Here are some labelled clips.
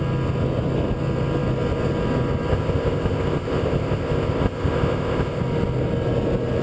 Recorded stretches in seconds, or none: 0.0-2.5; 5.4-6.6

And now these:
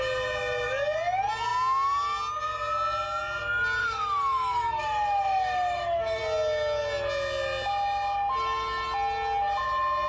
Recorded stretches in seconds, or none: 0.0-3.8; 6.2-10.1

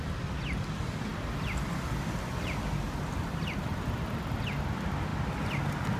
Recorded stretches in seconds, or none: 0.0-6.0